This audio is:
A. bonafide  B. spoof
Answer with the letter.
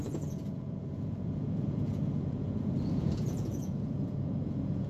B